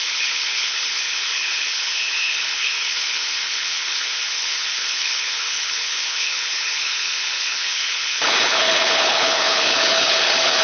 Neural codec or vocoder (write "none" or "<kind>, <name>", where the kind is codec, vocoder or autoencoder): codec, HILCodec